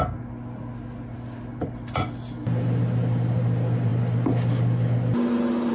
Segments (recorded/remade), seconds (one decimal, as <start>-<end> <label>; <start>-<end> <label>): 0.0-5.7 recorded